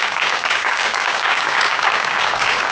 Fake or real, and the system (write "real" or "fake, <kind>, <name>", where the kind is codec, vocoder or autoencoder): fake, codec, DAC